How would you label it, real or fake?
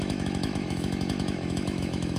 fake